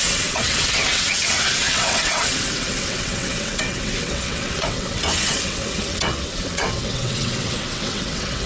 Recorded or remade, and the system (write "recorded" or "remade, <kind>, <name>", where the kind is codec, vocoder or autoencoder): remade, vocoder, WaveNeXt